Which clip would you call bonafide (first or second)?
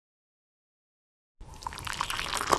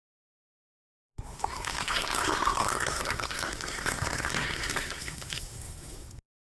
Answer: first